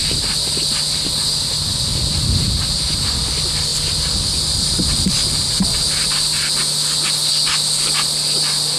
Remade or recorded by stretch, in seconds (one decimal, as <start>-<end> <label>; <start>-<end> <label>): 0.0-8.8 recorded